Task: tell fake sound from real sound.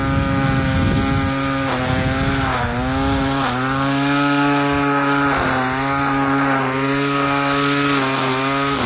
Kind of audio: real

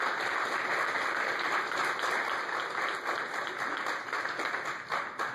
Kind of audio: real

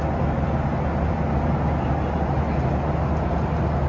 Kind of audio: real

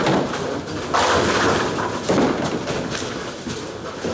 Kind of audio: real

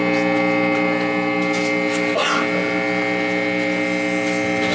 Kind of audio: real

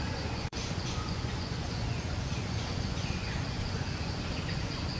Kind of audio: fake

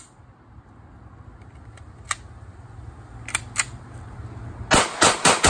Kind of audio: real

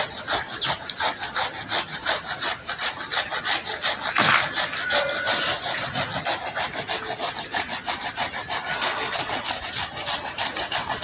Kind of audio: real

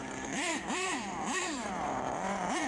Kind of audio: fake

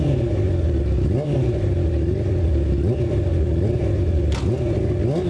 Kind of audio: real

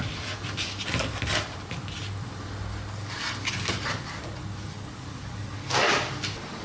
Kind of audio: real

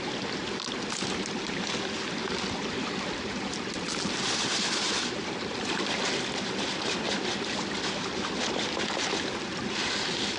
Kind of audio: real